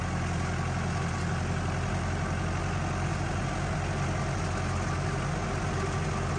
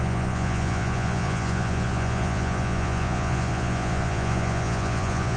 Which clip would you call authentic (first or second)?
first